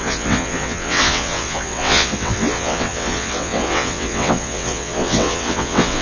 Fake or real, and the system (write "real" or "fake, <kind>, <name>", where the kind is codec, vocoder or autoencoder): fake, vocoder, WaveNeXt